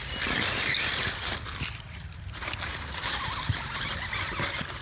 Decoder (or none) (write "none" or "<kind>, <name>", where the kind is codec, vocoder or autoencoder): none